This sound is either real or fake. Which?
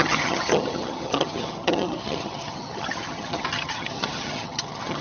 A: fake